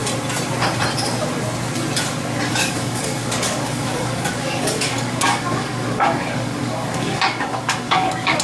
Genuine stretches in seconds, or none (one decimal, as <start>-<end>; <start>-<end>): 0.0-2.5